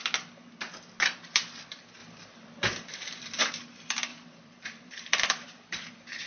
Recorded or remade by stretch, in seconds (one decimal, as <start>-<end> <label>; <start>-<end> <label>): 0.0-2.0 recorded; 2.0-3.4 remade; 3.4-4.1 recorded; 4.1-6.3 remade